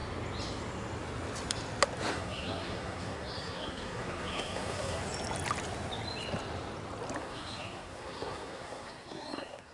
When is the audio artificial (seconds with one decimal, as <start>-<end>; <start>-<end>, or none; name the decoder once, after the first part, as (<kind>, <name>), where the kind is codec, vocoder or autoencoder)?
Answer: 2.1-5.0 (codec, SNAC); 7.2-9.7